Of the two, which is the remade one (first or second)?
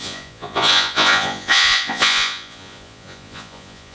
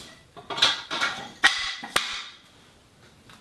first